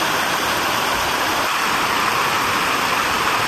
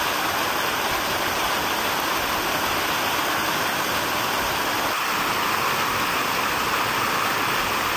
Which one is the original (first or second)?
second